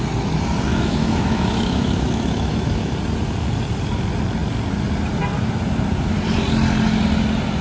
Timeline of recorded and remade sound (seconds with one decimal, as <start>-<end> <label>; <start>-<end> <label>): 0.0-0.7 recorded; 0.7-2.9 remade; 2.9-7.6 recorded